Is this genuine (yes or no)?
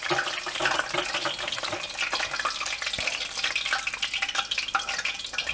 yes